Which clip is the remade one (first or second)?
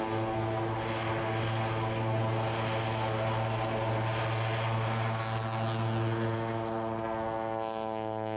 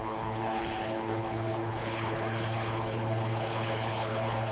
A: second